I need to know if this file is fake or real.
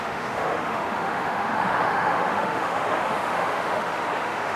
fake